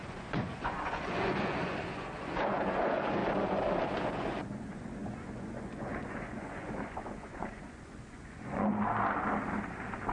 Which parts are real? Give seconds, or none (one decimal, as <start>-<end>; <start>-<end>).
3.2-4.0; 8.7-10.1